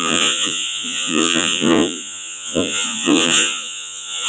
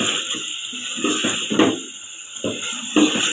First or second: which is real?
second